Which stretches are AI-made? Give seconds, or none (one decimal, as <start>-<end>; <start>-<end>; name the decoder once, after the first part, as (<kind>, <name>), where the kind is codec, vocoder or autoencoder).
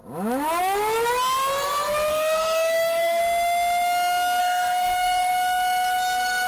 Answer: 2.1-3.2 (codec, DAC); 4.4-5.3